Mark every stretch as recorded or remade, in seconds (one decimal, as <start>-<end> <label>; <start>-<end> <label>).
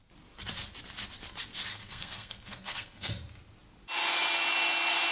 0.0-1.7 recorded; 1.7-3.1 remade; 3.1-5.1 recorded